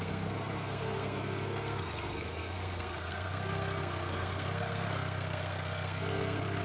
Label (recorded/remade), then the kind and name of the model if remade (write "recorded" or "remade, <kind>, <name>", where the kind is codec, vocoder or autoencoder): remade, codec, SNAC